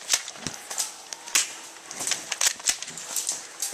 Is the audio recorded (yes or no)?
yes